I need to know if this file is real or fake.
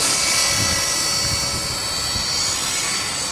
real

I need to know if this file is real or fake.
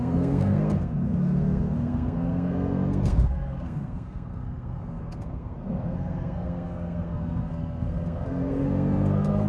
fake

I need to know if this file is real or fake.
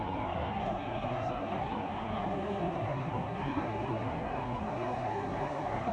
fake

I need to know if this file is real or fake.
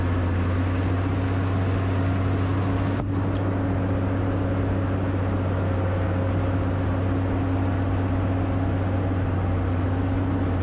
real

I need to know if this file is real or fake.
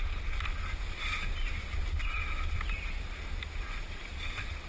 real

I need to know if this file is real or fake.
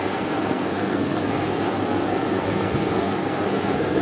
fake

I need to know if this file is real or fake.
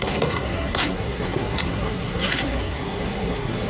fake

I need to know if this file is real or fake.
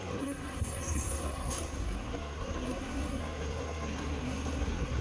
fake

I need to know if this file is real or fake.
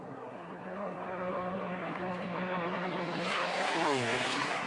fake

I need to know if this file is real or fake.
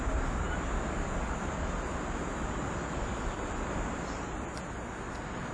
real